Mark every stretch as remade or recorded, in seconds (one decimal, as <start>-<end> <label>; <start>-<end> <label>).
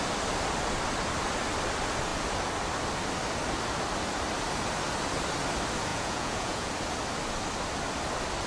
0.0-5.9 recorded; 5.9-6.7 remade; 6.7-8.5 recorded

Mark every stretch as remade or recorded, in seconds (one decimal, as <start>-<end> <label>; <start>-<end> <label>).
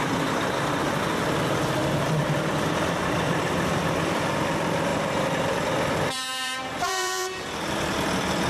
0.0-4.9 remade; 4.9-5.5 recorded; 5.5-8.5 remade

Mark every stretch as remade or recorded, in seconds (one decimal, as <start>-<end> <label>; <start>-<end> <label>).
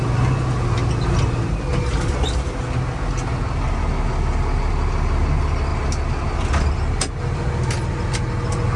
0.0-8.8 recorded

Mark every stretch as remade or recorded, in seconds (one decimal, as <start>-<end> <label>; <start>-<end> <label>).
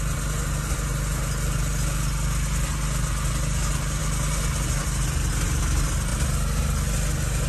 0.0-7.5 recorded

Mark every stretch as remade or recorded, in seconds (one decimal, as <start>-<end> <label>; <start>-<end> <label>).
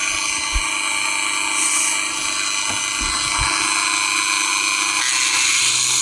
0.0-6.0 recorded